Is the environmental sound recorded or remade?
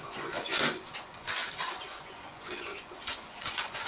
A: remade